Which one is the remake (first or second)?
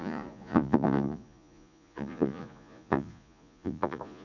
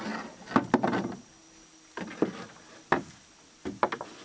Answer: first